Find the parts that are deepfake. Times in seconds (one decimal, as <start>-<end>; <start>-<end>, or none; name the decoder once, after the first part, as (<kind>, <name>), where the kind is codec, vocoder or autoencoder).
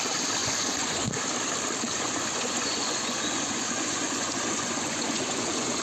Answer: 0.4-1.1 (vocoder, Vocos); 1.9-5.8